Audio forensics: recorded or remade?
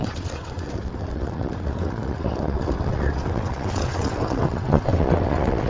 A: remade